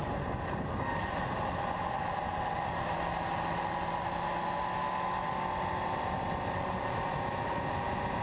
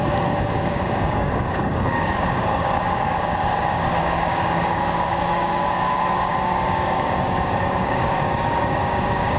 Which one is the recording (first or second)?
first